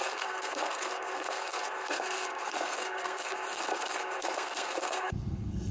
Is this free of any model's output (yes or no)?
no